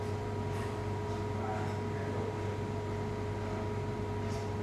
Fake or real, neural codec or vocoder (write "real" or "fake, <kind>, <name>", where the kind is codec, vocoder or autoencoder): real